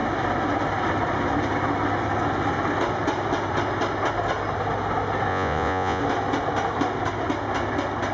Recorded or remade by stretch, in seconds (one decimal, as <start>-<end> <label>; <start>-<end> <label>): 0.0-5.3 recorded; 5.3-6.0 remade; 6.0-8.1 recorded